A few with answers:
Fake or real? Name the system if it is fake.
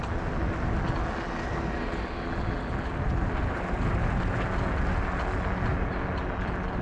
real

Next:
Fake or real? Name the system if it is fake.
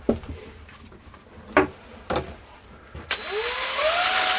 real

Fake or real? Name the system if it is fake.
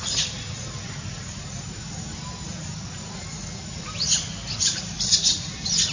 real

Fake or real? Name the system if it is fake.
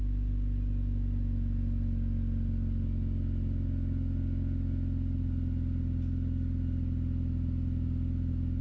real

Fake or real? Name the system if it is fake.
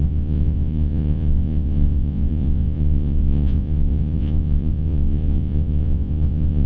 fake, vocoder, Vocos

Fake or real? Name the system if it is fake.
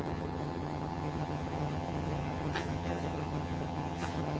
fake, vocoder, HiFi-GAN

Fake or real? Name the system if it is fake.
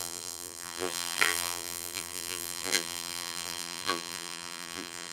fake, vocoder, BigVGAN v2